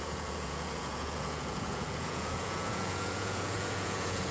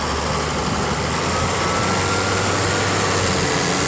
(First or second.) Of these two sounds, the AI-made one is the first